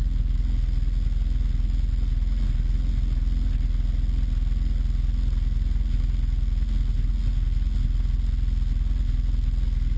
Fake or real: real